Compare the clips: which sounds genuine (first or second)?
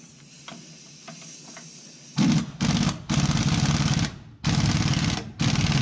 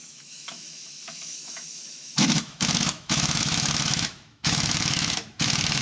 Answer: first